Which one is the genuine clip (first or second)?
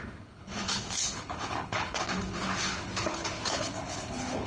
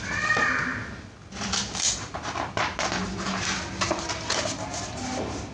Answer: second